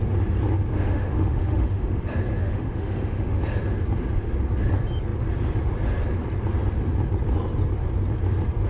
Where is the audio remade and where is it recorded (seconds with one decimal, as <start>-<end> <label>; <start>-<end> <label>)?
0.0-0.7 recorded; 0.7-2.0 remade; 2.0-2.4 recorded; 2.4-3.4 remade; 3.4-8.7 recorded